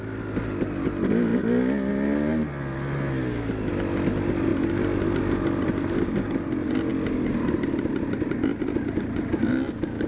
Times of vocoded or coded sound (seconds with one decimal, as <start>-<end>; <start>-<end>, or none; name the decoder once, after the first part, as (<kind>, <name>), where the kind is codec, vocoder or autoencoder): none